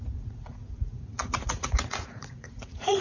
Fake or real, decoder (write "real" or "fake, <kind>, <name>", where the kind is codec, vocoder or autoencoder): fake, vocoder, Vocos